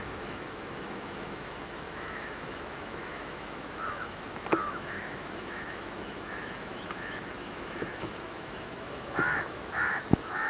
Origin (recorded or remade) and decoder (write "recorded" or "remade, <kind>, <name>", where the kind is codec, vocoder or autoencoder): remade, autoencoder, DAC-VAE